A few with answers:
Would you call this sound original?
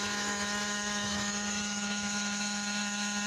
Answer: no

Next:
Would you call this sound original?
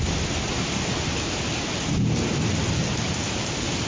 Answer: yes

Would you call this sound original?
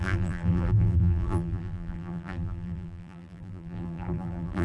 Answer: no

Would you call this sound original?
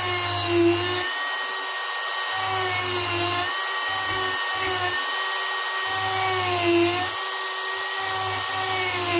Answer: yes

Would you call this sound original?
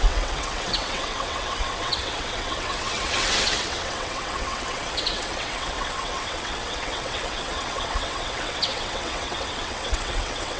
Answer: no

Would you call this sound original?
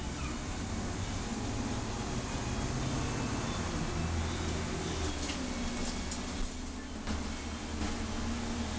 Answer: yes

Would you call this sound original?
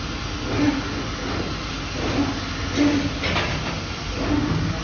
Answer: yes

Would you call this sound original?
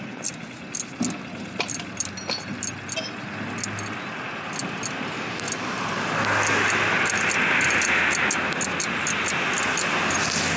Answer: yes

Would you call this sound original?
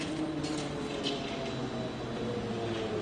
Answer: yes